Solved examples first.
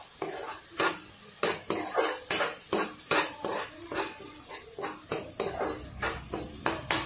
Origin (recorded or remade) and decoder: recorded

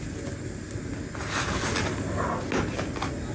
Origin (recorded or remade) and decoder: recorded